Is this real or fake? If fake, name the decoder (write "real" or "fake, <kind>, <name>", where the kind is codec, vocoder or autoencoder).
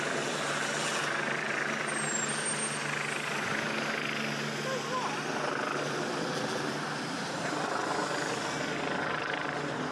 real